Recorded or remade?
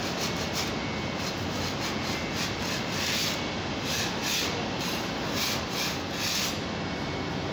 recorded